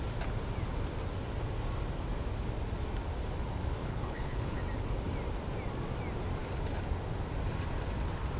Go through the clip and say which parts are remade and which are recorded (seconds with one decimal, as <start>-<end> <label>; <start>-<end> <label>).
0.0-3.8 recorded; 3.8-4.6 remade; 4.6-8.4 recorded